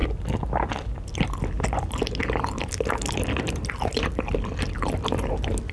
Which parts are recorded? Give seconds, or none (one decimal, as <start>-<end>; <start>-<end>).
0.0-5.7